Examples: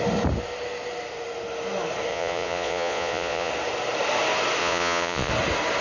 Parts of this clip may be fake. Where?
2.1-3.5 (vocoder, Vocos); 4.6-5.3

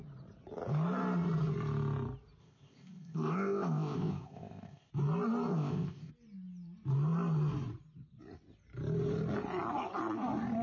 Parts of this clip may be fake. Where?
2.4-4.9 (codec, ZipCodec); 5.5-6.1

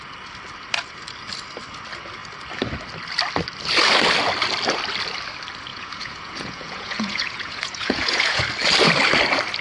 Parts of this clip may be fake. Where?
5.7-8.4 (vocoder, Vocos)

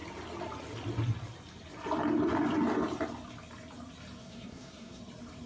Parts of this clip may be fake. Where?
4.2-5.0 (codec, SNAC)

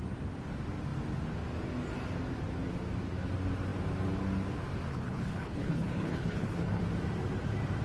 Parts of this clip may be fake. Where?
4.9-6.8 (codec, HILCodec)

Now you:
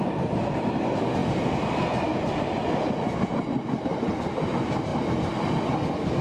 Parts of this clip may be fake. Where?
none

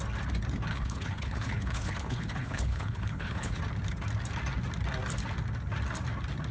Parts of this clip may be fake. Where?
0.7-3.6 (codec, HILCodec)